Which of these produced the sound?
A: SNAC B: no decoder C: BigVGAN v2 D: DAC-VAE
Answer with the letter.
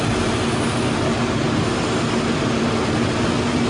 B